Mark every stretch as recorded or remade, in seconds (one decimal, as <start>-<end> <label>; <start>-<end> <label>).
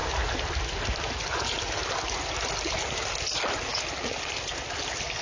0.0-5.2 recorded